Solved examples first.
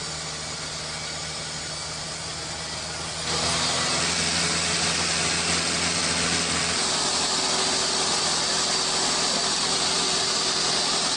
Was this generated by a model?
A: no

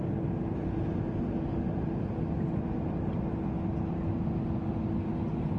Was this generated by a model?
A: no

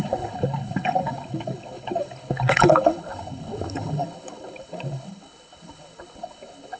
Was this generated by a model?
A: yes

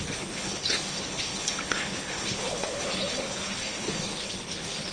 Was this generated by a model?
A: yes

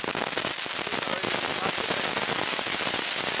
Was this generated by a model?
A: no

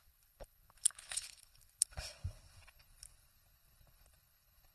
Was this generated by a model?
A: yes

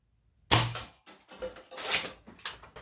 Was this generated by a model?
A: no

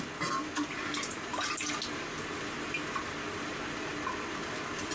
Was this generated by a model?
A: no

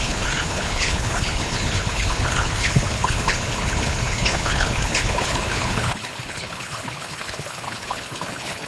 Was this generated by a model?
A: yes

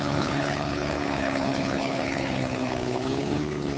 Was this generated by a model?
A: yes